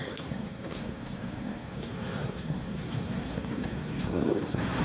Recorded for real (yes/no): no